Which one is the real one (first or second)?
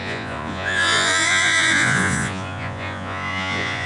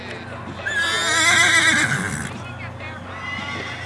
second